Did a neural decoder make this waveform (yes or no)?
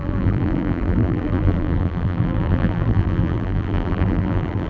yes